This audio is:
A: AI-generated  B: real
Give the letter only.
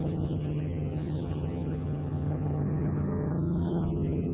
A